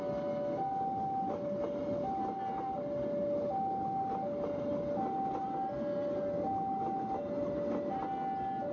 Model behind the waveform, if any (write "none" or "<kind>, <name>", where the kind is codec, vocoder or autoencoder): none